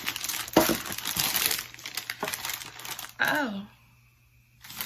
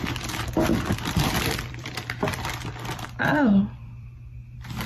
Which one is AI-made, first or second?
second